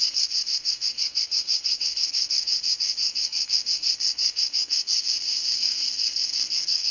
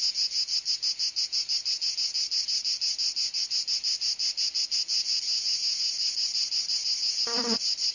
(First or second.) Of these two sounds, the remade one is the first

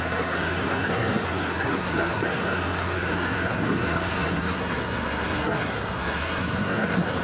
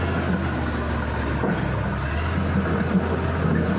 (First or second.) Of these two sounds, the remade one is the first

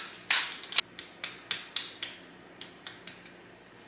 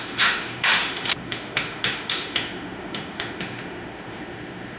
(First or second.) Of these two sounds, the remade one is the second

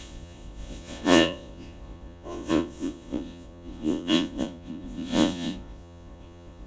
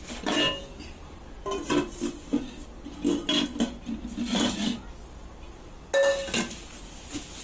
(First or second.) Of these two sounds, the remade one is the first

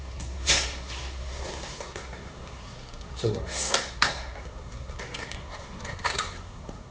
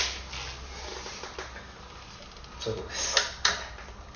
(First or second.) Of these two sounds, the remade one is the first